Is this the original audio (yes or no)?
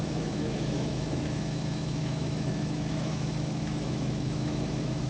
no